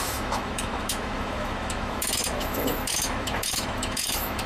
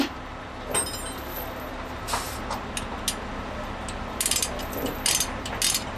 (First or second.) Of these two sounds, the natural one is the second